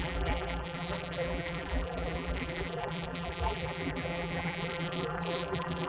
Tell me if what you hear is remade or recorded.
remade